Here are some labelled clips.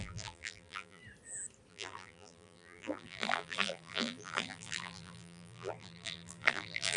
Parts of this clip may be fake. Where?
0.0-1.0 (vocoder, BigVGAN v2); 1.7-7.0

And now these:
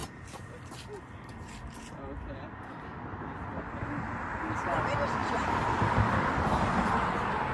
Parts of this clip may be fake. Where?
5.2-7.5 (vocoder, BigVGAN v2)